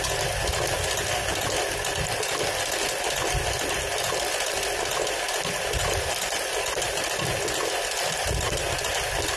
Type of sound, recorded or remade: recorded